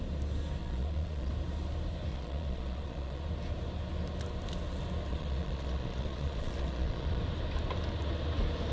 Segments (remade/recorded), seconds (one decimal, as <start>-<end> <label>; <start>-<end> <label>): 0.0-0.6 recorded; 0.6-1.3 remade; 1.3-2.1 recorded; 2.1-3.2 remade; 3.2-5.1 recorded; 5.1-7.2 remade; 7.2-8.7 recorded